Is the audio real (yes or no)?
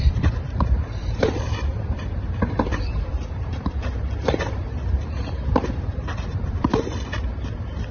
no